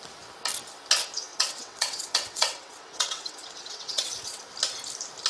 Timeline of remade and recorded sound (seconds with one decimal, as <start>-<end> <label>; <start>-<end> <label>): 0.0-1.3 recorded; 1.3-4.4 remade; 4.4-5.3 recorded